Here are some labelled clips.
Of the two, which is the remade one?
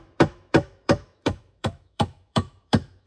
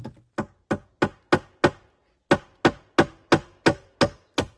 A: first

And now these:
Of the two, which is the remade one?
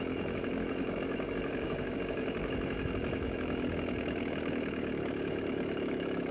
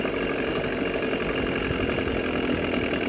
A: first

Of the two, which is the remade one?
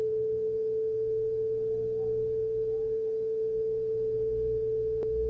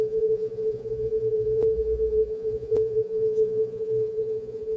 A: second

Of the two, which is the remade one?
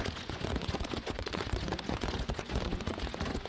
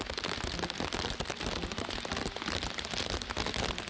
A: first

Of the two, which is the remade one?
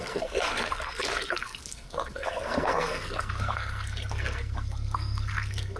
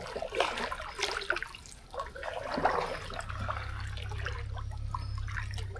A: first